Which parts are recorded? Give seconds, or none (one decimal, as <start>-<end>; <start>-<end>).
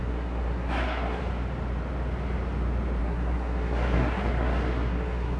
1.2-3.0